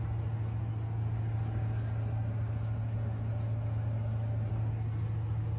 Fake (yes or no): no